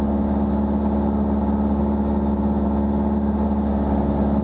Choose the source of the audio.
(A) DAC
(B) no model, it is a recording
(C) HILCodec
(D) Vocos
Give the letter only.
B